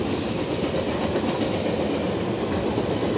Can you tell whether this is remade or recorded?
recorded